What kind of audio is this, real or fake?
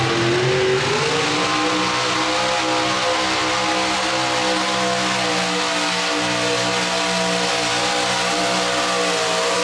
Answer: real